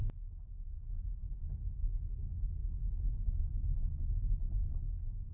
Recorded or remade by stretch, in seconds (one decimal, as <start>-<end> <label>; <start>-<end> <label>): 0.0-5.3 recorded